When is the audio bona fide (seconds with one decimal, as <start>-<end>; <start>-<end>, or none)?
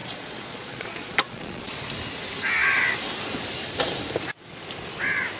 1.6-5.4